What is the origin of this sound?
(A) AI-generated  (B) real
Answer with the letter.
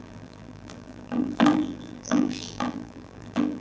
A